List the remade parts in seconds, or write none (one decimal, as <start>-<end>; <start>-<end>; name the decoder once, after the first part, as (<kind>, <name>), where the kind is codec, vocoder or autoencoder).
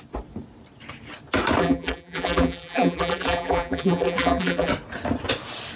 1.6-4.7 (vocoder, BigVGAN v2)